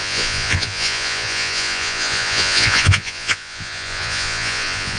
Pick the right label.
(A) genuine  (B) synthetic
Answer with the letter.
B